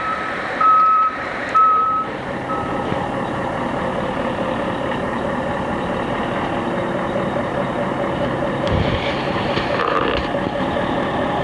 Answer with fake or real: fake